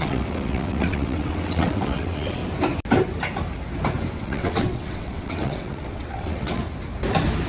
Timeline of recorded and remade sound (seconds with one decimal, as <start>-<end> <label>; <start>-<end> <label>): 0.0-2.4 remade; 2.4-4.1 recorded; 4.1-6.6 remade; 6.6-7.5 recorded